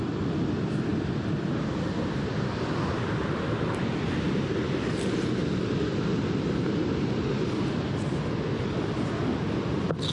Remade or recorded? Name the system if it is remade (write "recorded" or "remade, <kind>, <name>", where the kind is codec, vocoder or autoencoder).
recorded